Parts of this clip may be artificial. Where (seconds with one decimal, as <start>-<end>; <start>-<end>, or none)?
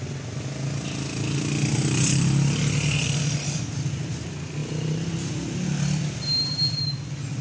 none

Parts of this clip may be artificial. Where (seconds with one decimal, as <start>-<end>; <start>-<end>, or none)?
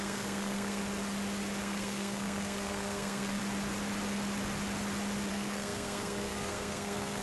0.0-0.8; 1.6-3.4; 5.3-7.2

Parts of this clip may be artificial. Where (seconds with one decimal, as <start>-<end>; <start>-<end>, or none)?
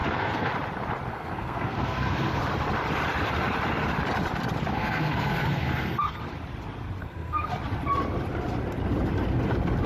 0.0-0.5; 1.1-2.4; 4.7-6.2; 7.0-7.5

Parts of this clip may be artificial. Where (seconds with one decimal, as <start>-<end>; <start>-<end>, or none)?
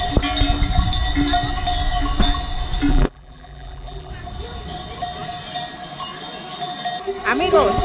2.9-4.1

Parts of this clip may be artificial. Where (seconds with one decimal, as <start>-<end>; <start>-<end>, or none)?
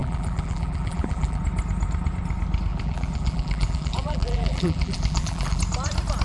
0.0-1.4; 2.7-5.6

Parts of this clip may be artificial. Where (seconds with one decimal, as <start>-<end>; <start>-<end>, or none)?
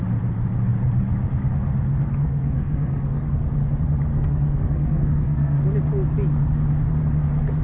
2.2-3.2; 4.1-5.6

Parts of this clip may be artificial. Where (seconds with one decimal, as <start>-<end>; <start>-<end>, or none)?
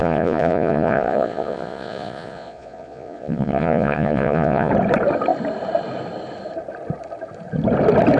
0.0-4.7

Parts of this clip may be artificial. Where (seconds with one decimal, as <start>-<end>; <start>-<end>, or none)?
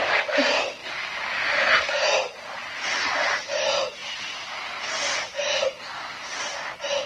none